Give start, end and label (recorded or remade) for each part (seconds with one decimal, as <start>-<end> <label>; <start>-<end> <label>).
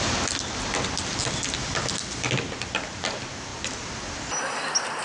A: 0.0-5.0 recorded